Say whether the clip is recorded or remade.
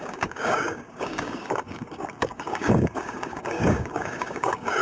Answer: remade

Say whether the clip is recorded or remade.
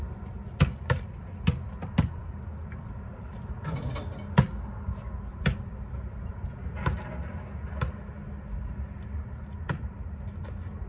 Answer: recorded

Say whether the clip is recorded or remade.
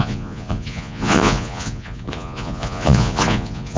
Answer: remade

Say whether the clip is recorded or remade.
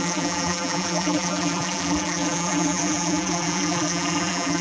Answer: remade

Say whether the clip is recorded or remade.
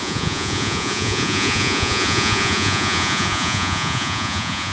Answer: remade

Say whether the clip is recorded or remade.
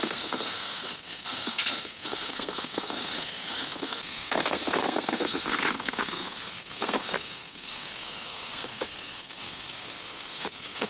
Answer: remade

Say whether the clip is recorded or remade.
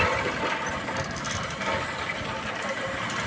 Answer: recorded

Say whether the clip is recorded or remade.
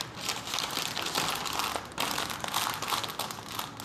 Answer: recorded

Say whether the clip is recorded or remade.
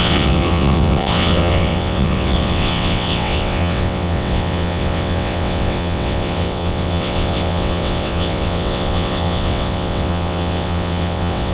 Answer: remade